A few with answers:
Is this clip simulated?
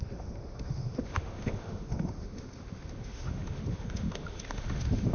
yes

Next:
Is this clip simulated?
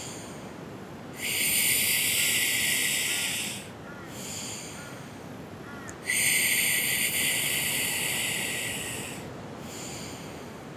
no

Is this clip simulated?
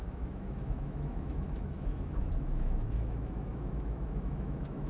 yes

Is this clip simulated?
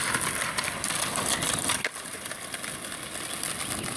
no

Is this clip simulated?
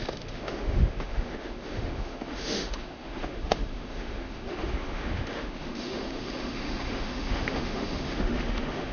yes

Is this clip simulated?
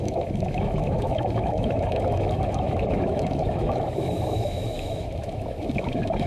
yes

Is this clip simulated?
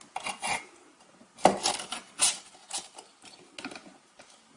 no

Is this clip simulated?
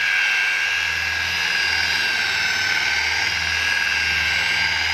no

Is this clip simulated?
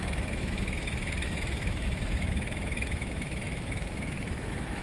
yes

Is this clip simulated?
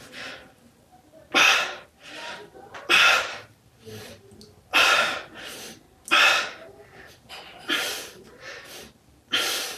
no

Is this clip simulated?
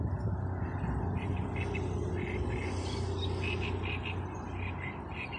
no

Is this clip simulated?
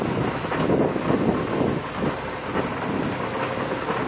no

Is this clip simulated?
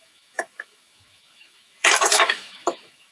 yes